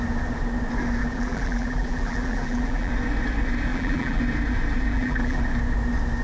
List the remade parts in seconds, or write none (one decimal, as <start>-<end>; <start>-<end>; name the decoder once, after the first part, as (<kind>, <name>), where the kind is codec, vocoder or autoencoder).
1.0-2.9 (vocoder, BigVGAN v2); 3.7-4.2; 4.9-5.4